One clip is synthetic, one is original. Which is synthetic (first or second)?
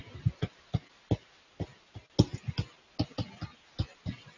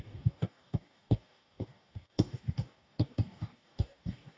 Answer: second